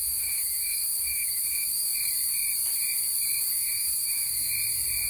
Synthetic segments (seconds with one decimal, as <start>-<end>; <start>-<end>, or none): 0.0-1.9; 3.4-4.5